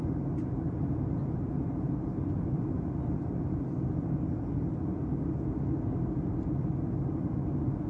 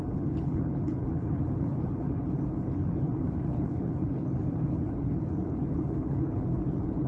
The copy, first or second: second